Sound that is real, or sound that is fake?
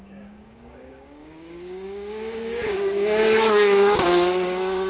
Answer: fake